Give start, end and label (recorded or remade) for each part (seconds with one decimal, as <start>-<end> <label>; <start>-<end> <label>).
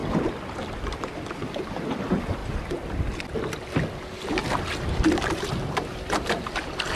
0.0-7.0 recorded